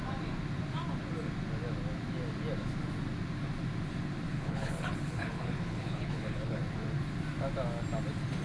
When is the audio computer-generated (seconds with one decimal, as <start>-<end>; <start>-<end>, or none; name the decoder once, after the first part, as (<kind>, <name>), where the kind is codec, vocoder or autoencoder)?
4.3-6.6 (codec, HILCodec)